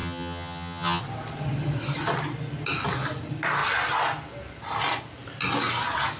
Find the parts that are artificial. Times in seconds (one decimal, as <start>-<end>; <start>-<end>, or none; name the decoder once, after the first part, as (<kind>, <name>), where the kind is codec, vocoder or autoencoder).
0.0-1.0 (vocoder, HiFi-GAN)